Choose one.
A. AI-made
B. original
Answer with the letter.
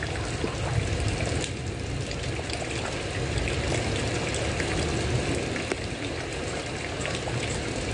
B